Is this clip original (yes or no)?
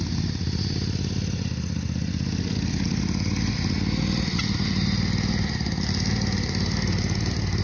yes